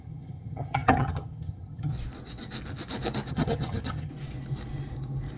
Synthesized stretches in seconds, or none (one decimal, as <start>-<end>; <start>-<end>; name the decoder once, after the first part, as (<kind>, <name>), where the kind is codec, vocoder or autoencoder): 0.0-1.9 (vocoder, HiFi-GAN); 3.3-4.1